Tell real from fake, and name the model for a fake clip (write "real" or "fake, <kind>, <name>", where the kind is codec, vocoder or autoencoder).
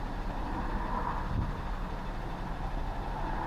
real